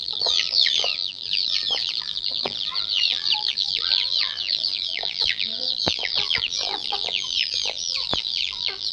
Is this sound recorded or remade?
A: remade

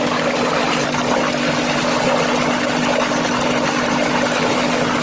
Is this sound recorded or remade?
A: recorded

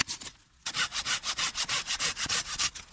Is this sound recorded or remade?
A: remade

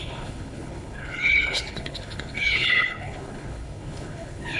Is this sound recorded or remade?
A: remade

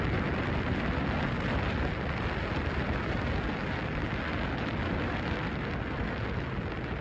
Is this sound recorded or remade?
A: recorded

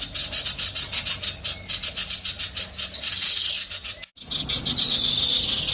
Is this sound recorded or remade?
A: recorded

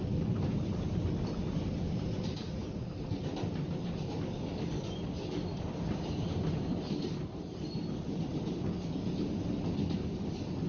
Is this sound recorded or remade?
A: recorded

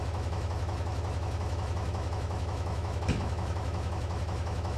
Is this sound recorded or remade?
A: remade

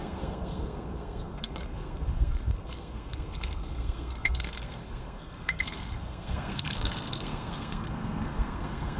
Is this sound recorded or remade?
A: remade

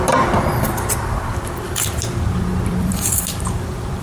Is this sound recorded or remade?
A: remade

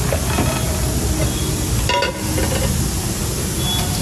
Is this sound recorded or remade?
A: recorded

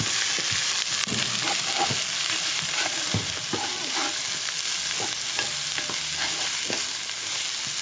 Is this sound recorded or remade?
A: recorded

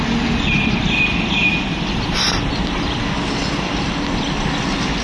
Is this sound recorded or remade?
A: recorded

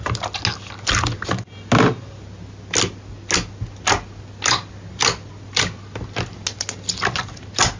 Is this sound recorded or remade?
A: recorded